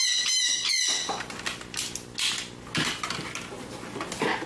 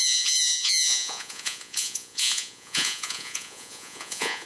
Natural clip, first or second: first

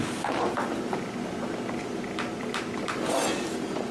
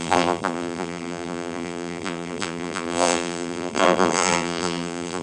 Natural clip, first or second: first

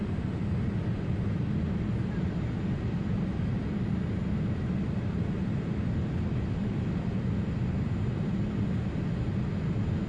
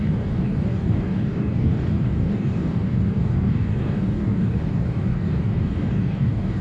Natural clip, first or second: first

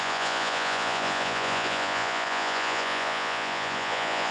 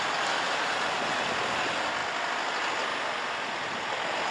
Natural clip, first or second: second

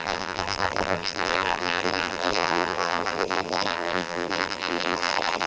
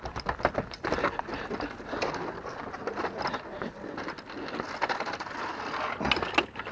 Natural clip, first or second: second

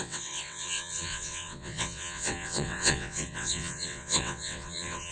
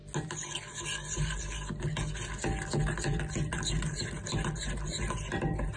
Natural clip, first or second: second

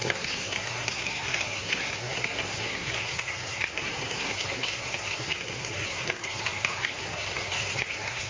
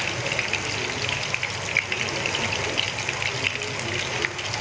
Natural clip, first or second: second